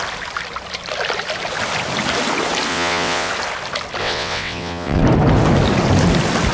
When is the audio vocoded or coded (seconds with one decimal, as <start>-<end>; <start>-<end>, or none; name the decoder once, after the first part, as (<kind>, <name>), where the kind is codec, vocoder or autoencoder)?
2.7-3.3 (vocoder, WaveNeXt); 4.0-5.0